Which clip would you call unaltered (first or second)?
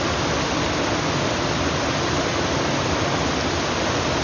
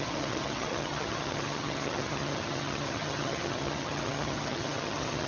first